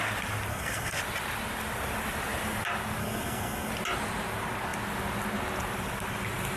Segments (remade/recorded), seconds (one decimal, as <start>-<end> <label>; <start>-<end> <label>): 0.0-0.5 recorded; 0.5-1.0 remade; 1.0-3.0 recorded; 3.0-3.7 remade; 3.7-6.6 recorded